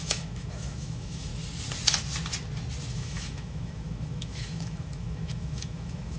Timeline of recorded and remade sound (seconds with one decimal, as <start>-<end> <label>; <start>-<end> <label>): 0.0-1.3 remade; 1.3-2.9 recorded; 2.9-6.2 remade